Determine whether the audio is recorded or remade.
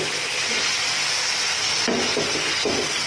recorded